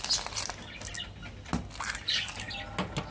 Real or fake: real